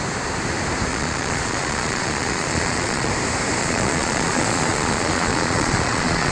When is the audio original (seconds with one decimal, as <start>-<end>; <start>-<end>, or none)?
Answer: 0.0-0.9; 3.1-3.6